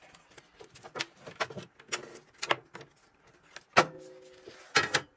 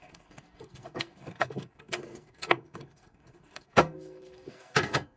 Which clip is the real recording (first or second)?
first